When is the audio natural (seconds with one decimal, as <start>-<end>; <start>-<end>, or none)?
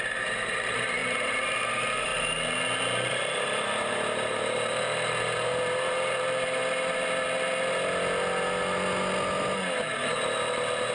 2.1-3.1; 6.6-10.9